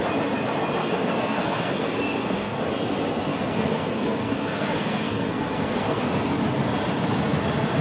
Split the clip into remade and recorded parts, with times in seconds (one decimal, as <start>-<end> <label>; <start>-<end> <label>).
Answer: 0.0-0.8 recorded; 0.8-2.7 remade; 2.7-3.3 recorded; 3.3-6.0 remade; 6.0-7.8 recorded

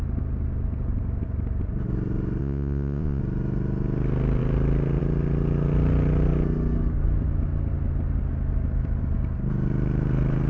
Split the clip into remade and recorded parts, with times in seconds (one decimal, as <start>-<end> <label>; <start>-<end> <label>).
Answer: 0.0-2.4 recorded; 2.4-3.2 remade; 3.2-10.5 recorded